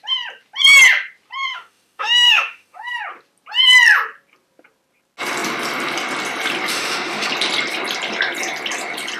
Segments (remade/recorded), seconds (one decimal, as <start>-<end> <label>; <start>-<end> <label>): 0.0-1.5 recorded; 1.5-2.9 remade; 2.9-6.7 recorded; 6.7-7.3 remade; 7.3-9.2 recorded